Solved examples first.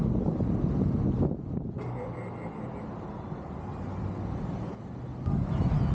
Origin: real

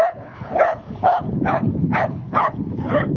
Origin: fake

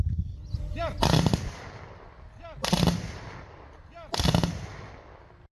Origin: real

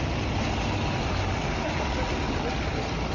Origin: real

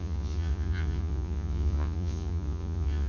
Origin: fake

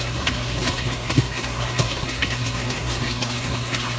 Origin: fake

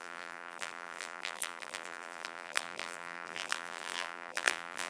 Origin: fake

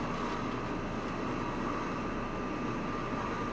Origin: real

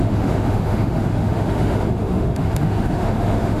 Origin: fake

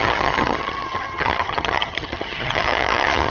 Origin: fake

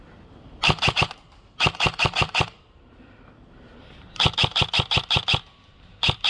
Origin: fake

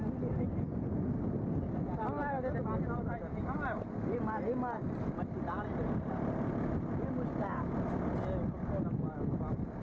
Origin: real